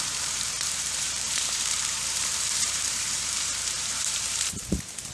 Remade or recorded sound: remade